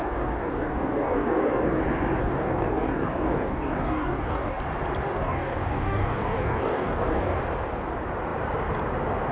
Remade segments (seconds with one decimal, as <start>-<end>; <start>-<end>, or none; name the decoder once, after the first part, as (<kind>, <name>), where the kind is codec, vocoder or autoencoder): 0.0-1.8 (codec, DAC); 2.2-4.6; 5.0-7.4